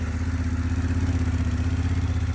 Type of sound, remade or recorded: recorded